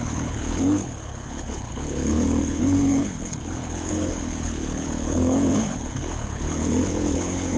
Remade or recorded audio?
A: remade